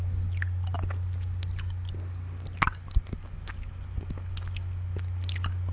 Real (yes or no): yes